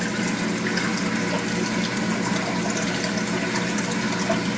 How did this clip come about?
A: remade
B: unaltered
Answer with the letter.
B